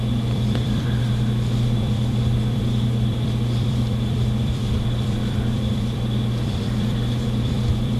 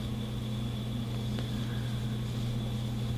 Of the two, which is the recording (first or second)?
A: second